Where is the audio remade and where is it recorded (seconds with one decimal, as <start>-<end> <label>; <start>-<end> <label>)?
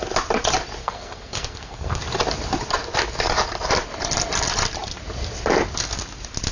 0.0-0.8 recorded; 0.8-2.0 remade; 2.0-6.5 recorded